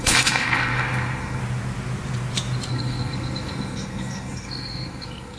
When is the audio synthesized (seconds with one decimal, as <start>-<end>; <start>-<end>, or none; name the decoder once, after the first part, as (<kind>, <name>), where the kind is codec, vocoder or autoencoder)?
0.0-1.4 (codec, SNAC); 2.7-5.4